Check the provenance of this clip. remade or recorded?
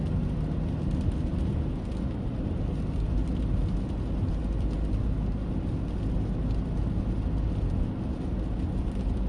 recorded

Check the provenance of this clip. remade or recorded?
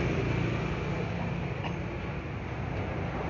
recorded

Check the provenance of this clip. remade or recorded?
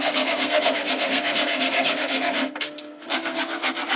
remade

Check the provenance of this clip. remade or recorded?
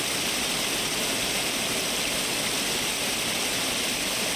recorded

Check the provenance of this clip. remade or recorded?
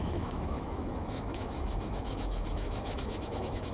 remade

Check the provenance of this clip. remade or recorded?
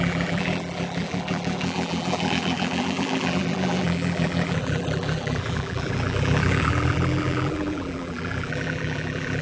remade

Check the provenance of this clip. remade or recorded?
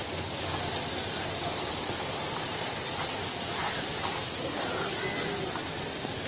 recorded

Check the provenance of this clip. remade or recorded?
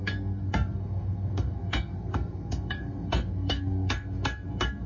remade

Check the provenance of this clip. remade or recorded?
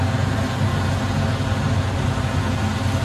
recorded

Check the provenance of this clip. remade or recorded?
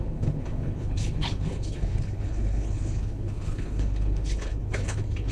remade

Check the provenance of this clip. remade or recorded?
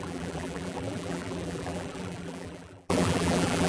remade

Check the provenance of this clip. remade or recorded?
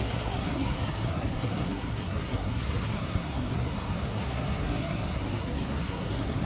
remade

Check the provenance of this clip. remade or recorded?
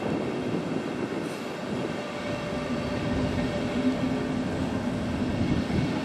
recorded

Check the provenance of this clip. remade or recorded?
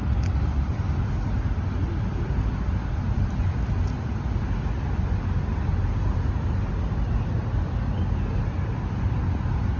recorded